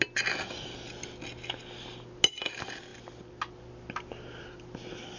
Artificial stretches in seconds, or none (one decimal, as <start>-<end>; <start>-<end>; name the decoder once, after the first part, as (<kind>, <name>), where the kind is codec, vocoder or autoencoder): none